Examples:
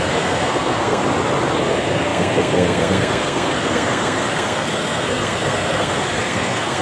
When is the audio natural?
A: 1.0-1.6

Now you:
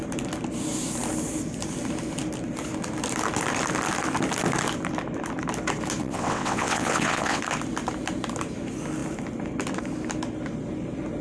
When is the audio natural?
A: 0.0-6.0; 7.4-11.2

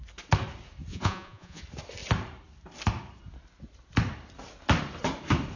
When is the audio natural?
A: 0.0-0.9; 1.6-5.6

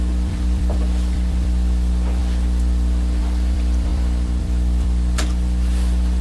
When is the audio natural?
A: none

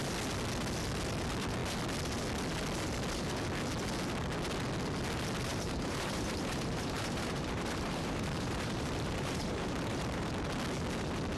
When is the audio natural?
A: 0.0-5.5; 10.3-11.4